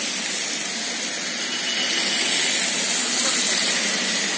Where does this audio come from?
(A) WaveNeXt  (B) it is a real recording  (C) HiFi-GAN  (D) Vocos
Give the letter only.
B